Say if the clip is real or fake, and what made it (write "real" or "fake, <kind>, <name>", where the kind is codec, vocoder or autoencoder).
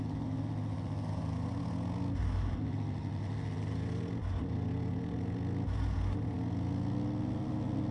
real